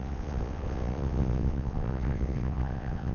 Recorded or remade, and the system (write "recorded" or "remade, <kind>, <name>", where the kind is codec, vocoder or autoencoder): remade, vocoder, WaveNeXt